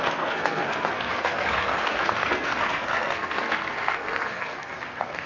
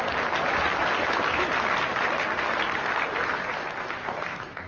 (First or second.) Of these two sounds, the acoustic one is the second